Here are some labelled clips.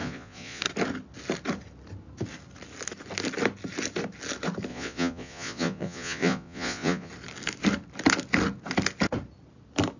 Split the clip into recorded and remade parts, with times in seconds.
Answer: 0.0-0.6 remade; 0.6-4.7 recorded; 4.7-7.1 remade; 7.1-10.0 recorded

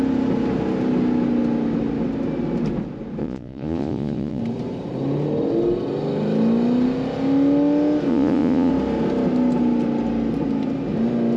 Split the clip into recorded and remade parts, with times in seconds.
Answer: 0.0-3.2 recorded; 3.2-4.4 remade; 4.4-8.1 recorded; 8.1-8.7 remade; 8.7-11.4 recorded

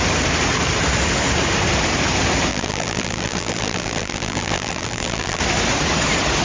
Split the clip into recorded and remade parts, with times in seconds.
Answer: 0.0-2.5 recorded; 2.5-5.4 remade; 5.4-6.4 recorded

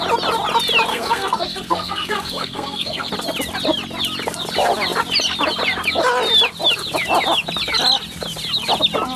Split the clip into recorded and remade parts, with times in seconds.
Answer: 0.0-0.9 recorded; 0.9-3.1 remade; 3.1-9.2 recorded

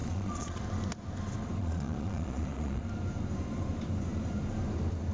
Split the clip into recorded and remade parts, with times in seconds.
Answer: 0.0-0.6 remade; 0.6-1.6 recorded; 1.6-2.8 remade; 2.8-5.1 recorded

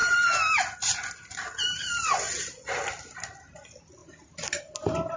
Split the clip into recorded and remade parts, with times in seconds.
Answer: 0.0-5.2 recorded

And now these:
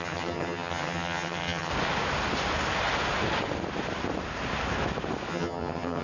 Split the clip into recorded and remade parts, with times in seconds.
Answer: 0.0-1.7 remade; 1.7-5.3 recorded; 5.3-6.0 remade

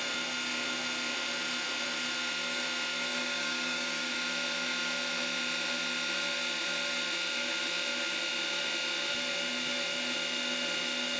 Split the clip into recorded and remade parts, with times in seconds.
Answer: 0.0-3.2 recorded; 3.2-4.1 remade; 4.1-11.2 recorded